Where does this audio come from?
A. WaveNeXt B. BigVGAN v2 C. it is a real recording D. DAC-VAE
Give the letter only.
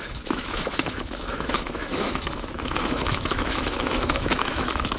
D